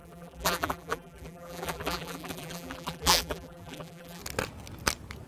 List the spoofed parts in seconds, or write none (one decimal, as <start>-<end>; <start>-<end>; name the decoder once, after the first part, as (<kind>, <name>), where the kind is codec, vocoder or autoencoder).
0.0-4.2 (vocoder, BigVGAN v2)